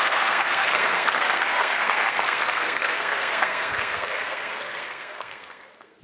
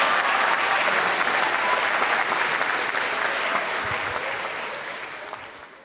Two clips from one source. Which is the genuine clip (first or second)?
second